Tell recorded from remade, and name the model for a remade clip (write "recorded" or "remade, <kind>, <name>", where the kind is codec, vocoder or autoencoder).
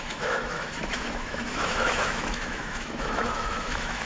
remade, autoencoder, DAC-VAE